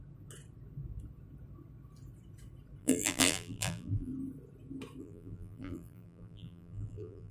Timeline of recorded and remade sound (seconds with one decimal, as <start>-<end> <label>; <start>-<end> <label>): 0.0-2.8 recorded; 2.8-4.1 remade; 4.1-5.0 recorded; 5.0-7.3 remade